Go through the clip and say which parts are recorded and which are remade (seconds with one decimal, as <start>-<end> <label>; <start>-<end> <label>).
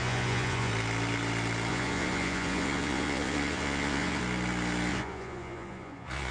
0.0-0.7 remade; 0.7-1.7 recorded; 1.7-4.2 remade; 4.2-4.9 recorded; 4.9-6.3 remade